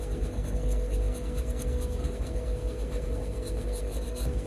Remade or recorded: remade